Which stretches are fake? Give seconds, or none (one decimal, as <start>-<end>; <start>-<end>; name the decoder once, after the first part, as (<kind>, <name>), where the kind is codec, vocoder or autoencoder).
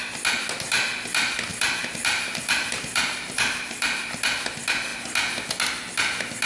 1.5-4.2 (vocoder, BigVGAN v2)